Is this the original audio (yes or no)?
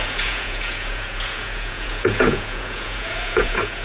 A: no